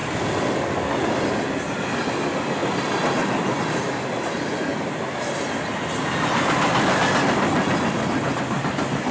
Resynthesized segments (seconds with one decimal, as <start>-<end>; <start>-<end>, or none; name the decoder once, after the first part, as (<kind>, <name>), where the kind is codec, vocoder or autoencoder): none